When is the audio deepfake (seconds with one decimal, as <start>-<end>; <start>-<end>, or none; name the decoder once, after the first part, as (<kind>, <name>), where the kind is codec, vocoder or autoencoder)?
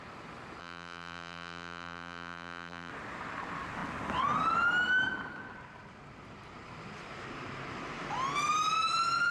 0.6-2.9 (vocoder, BigVGAN v2)